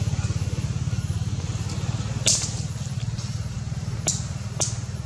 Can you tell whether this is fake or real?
real